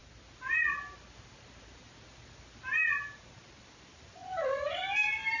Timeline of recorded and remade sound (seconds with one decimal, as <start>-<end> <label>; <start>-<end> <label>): 0.0-5.4 recorded